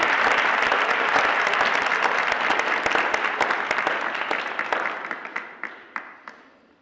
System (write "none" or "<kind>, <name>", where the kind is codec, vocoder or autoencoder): none